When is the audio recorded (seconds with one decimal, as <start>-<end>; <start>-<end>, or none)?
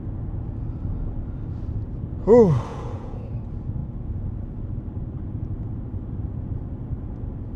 0.0-2.7; 3.3-7.6